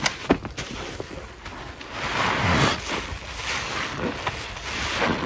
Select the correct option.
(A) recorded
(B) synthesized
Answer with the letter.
A